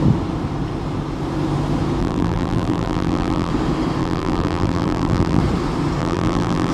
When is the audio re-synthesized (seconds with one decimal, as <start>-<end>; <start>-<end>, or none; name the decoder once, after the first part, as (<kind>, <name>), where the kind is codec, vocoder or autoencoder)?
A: 2.0-3.5 (vocoder, BigVGAN v2); 4.0-5.4; 6.0-6.7